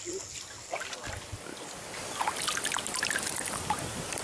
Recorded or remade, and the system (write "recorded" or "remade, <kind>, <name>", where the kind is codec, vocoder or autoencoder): recorded